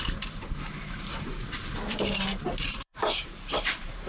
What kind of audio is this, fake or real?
fake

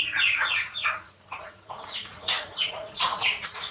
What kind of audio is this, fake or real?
fake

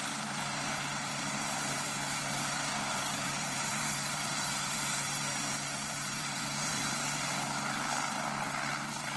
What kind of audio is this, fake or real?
fake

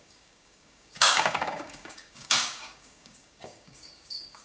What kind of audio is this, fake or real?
fake